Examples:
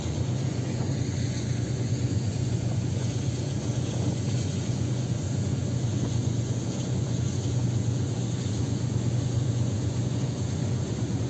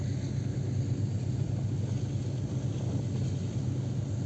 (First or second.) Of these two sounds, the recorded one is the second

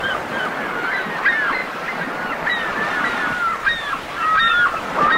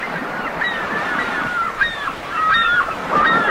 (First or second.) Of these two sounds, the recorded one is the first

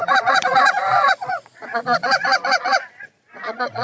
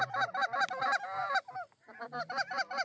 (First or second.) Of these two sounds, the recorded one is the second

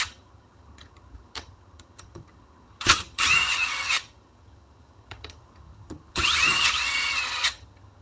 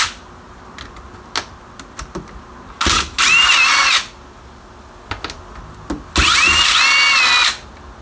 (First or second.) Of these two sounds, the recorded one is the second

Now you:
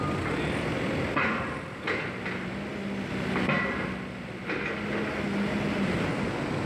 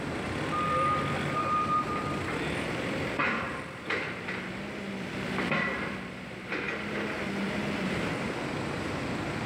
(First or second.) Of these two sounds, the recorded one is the first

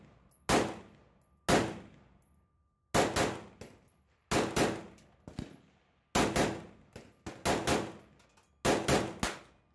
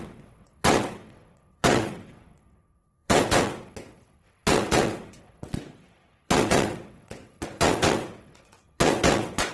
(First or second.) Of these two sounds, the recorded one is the first